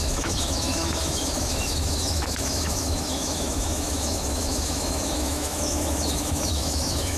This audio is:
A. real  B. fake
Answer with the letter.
B